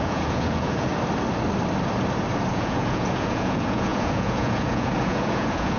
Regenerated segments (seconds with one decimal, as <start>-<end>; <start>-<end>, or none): 0.0-0.9; 2.5-5.8